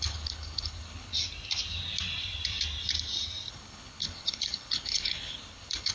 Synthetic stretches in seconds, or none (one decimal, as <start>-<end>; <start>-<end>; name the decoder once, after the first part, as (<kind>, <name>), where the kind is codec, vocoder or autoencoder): 0.0-1.1 (codec, HILCodec); 3.5-5.9